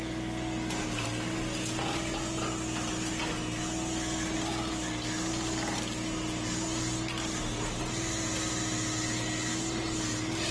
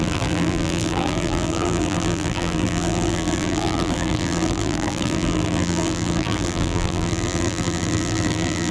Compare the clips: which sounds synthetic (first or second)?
second